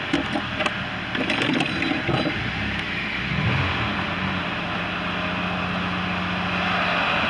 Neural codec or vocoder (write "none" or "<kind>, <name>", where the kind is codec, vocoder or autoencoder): none